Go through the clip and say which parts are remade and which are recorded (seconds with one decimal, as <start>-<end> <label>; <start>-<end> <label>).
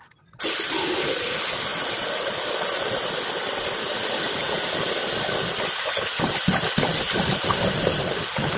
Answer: 0.0-8.6 recorded